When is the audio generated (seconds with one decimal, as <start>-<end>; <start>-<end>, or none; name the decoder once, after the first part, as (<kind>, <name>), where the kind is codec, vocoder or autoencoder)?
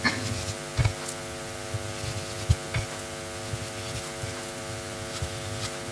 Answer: none